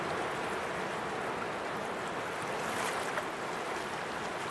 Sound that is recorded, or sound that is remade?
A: recorded